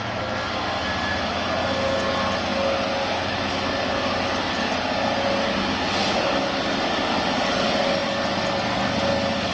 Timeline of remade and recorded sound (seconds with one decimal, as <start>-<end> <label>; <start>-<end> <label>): 0.0-9.5 recorded